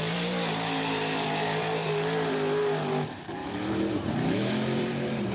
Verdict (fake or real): fake